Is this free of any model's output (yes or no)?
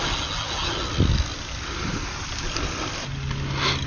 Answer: yes